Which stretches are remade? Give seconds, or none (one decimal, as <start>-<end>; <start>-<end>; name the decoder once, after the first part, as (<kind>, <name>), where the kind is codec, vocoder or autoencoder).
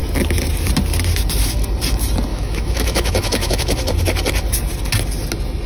2.3-3.8 (autoencoder, DAC-VAE)